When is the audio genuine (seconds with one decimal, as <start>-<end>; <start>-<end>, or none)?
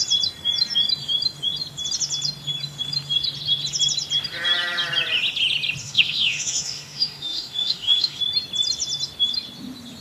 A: 0.0-5.8; 8.2-10.0